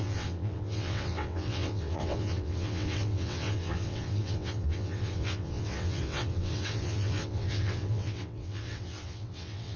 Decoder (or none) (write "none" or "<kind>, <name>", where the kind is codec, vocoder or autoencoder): vocoder, WaveNeXt